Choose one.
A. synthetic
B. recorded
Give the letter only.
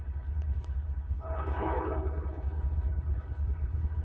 A